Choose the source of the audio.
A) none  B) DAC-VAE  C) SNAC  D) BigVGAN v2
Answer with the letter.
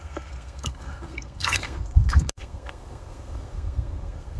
C